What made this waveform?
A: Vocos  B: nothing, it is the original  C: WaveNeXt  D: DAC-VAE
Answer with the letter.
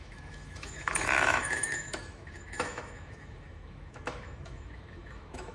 D